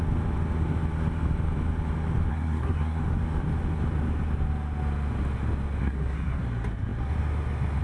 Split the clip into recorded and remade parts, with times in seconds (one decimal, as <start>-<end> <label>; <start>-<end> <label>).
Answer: 0.0-2.3 recorded; 2.3-3.0 remade; 3.0-5.8 recorded; 5.8-6.4 remade; 6.4-7.8 recorded